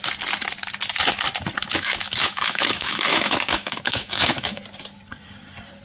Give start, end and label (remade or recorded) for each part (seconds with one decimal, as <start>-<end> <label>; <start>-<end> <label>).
0.0-1.6 recorded; 1.6-4.6 remade; 4.6-5.8 recorded